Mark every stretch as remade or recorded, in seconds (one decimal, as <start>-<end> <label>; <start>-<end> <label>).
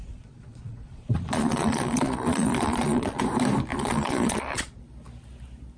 0.0-3.2 remade; 3.2-3.7 recorded; 3.7-4.8 remade; 4.8-5.8 recorded